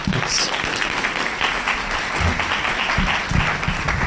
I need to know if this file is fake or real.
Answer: real